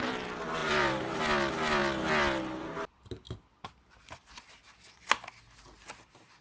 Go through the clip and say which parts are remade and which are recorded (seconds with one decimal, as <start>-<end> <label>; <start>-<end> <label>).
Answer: 0.0-0.6 recorded; 0.6-1.2 remade; 1.2-6.4 recorded